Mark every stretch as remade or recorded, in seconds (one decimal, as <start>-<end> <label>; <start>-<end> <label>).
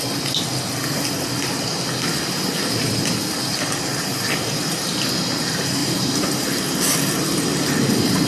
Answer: 0.0-5.8 recorded; 5.8-6.8 remade; 6.8-8.3 recorded